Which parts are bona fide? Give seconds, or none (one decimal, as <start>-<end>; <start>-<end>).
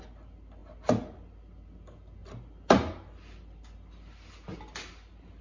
0.0-5.4